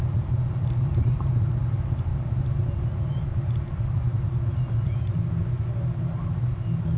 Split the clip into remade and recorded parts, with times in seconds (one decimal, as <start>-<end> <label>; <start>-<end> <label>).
0.0-7.0 recorded